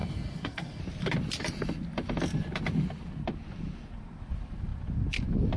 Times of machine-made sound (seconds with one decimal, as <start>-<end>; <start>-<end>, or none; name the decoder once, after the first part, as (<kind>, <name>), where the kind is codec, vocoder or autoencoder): 0.0-0.8 (codec, SNAC)